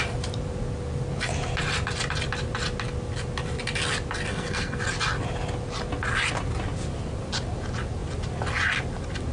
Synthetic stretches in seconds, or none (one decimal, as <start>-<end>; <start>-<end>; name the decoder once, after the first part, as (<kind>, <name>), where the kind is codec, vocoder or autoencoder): 4.3-4.8 (codec, SNAC)